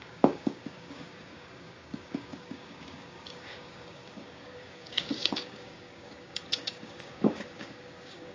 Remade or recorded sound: remade